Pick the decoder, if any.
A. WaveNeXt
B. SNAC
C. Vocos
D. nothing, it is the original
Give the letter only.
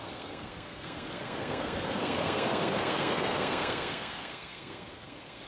B